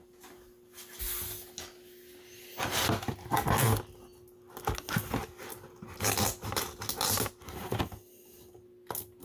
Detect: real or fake real